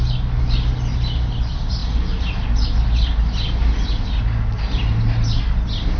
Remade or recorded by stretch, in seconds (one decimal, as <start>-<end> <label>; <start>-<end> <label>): 0.0-6.0 recorded